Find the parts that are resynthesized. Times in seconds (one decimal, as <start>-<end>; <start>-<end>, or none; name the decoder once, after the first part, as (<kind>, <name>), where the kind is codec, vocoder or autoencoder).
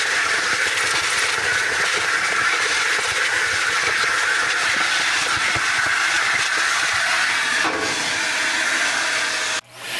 none